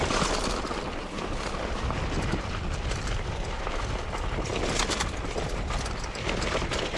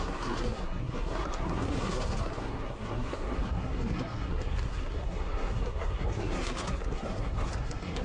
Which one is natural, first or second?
first